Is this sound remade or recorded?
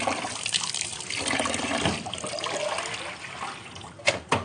recorded